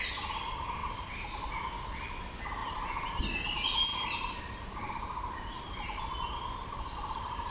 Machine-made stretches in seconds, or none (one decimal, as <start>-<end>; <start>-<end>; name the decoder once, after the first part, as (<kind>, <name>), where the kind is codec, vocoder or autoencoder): 0.8-1.5 (vocoder, BigVGAN v2); 2.6-3.2; 3.9-6.0; 6.6-7.5

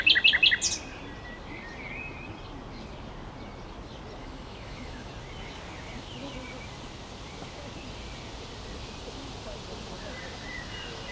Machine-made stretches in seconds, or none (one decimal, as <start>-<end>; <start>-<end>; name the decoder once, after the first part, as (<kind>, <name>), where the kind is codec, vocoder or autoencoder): 4.2-5.1 (autoencoder, DAC-VAE)